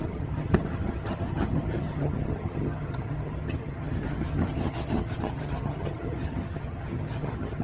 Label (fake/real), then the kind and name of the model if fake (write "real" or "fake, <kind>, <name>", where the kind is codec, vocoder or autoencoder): fake, vocoder, HiFi-GAN